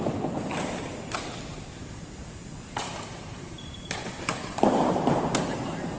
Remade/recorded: remade